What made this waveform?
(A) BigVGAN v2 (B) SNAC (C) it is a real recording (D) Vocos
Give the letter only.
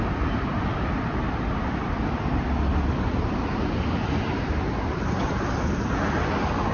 A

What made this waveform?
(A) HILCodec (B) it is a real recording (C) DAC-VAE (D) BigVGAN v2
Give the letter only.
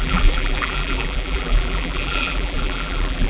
D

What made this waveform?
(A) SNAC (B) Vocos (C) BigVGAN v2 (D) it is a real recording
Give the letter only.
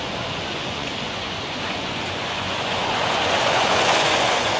B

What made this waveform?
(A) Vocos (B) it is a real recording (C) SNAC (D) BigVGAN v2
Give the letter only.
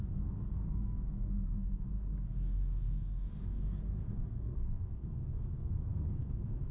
C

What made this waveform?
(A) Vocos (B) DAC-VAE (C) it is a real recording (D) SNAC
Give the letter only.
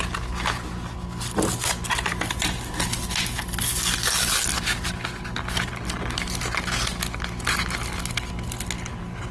C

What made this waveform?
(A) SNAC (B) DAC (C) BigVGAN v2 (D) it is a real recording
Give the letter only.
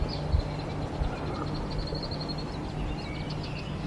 D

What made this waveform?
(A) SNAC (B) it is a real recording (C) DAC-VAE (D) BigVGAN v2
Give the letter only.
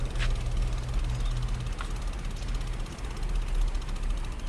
B